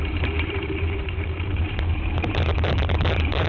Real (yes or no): no